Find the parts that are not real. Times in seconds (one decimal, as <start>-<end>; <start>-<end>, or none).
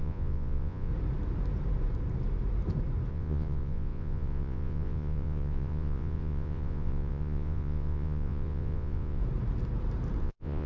0.0-0.9; 3.1-9.2; 10.2-10.7